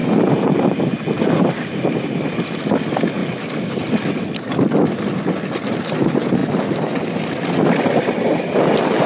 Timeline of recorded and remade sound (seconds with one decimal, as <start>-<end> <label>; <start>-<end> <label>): 0.0-9.1 recorded